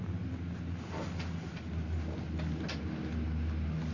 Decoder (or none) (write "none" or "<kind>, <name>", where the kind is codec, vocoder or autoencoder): none